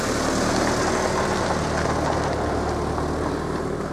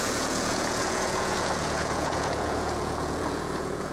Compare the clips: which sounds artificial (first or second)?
second